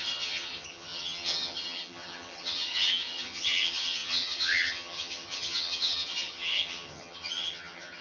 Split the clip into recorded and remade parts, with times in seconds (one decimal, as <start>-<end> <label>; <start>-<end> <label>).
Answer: 0.0-8.0 remade

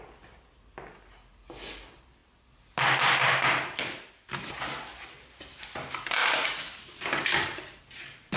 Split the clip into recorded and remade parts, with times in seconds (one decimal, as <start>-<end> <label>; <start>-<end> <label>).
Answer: 0.0-6.2 recorded; 6.2-7.8 remade; 7.8-8.4 recorded

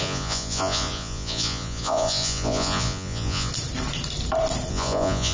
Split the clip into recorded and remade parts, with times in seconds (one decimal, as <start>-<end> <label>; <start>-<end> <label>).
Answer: 0.0-3.5 remade; 3.5-4.7 recorded; 4.7-5.3 remade

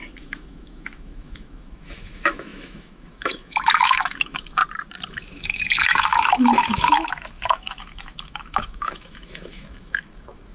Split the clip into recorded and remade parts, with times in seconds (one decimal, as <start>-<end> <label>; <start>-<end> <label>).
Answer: 0.0-4.6 remade; 4.6-5.1 recorded; 5.1-10.5 remade

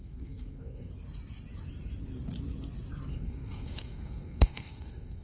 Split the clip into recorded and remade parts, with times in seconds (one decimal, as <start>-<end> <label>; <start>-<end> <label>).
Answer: 0.0-0.9 remade; 0.9-3.1 recorded; 3.1-5.2 remade

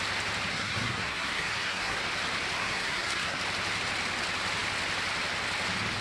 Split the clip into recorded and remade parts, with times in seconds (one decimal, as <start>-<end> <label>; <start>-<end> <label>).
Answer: 0.0-0.5 recorded; 0.5-2.0 remade; 2.0-2.6 recorded; 2.6-3.4 remade; 3.4-6.0 recorded

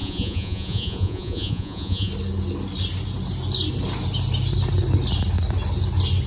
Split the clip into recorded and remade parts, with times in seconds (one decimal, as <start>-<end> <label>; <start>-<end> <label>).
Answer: 0.0-2.1 remade; 2.1-6.3 recorded